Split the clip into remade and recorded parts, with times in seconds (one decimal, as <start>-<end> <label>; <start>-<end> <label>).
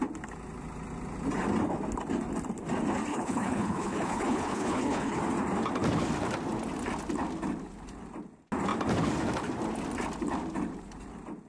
0.0-3.1 recorded; 3.1-5.2 remade; 5.2-11.5 recorded